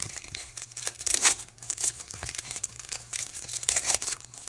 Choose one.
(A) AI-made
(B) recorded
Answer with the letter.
A